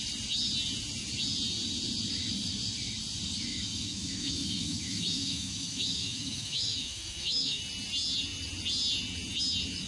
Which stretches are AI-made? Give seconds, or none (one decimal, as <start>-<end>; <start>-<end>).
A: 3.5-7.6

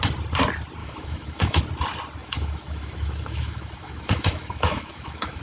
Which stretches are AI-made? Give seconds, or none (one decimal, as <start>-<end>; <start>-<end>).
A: 0.8-1.6; 2.2-5.4

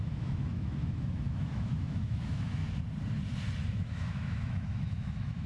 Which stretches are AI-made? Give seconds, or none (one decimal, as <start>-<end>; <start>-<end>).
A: 0.0-2.6; 3.7-5.5

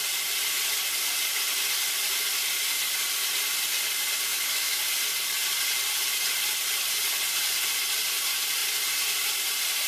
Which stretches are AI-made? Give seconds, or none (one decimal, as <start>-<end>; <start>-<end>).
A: 4.3-4.8

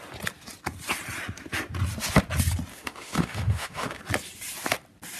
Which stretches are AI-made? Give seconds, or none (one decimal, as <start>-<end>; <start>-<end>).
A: 2.7-4.0

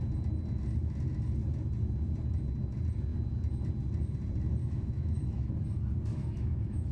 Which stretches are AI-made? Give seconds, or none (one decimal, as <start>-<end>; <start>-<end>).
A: 4.6-5.5; 6.1-6.9

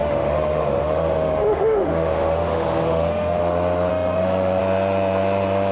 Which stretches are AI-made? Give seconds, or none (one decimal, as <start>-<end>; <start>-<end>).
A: 0.0-3.4; 3.9-4.6

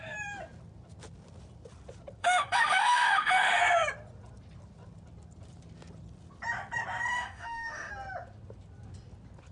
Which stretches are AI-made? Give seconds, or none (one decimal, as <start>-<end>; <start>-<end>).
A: 2.2-3.6; 7.1-7.9